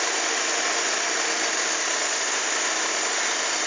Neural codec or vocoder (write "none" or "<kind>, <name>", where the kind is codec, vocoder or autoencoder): none